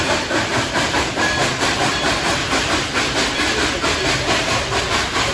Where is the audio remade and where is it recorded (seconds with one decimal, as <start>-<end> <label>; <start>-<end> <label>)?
0.0-0.5 remade; 0.5-1.9 recorded; 1.9-2.4 remade; 2.4-4.8 recorded; 4.8-5.3 remade